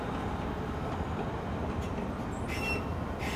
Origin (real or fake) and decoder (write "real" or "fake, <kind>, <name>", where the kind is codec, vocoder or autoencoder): real